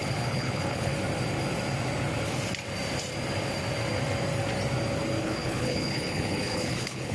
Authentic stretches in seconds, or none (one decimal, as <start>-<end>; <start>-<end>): 0.9-5.2